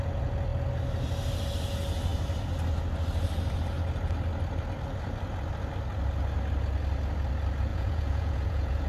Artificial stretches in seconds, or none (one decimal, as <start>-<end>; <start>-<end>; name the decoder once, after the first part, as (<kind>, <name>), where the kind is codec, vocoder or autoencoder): 7.7-8.9 (vocoder, Vocos)